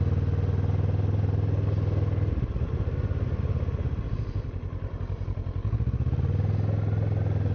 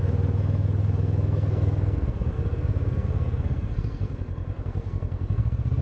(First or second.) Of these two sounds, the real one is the first